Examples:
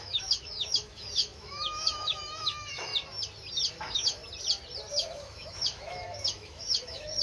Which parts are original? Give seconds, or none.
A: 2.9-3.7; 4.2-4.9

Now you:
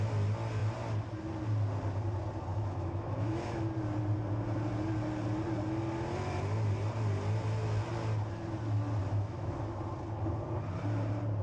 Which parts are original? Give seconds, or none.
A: 0.0-2.5; 3.5-9.0; 9.6-11.4

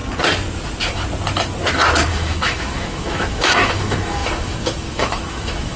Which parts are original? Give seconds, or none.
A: 0.0-2.1

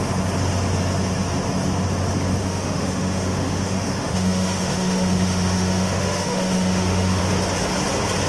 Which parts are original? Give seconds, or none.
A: 0.0-2.4; 7.2-8.3